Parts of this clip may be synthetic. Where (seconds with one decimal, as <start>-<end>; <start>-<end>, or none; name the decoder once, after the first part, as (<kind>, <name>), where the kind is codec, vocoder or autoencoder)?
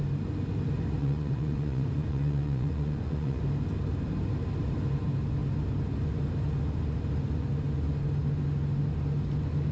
1.0-3.4 (vocoder, Vocos)